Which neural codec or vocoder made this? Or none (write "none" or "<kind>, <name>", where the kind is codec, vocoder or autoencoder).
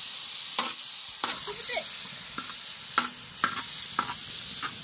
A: none